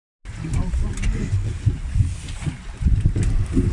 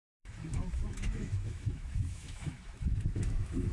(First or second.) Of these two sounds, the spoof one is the second